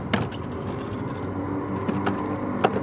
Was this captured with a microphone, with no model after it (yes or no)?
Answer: yes